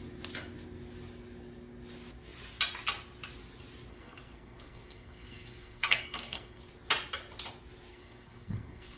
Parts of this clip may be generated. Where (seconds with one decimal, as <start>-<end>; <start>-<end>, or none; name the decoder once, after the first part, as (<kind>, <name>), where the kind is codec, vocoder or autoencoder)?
3.9-6.6 (codec, SNAC); 7.9-9.0